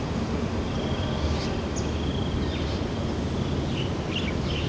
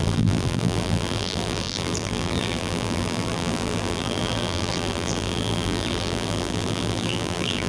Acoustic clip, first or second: first